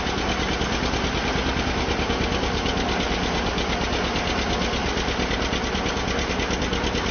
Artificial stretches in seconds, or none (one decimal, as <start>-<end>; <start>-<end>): none